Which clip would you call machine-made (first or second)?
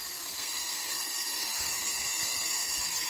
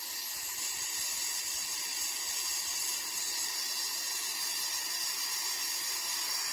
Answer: first